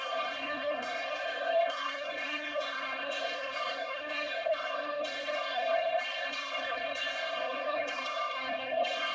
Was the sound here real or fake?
fake